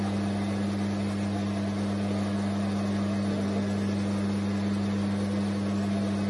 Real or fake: real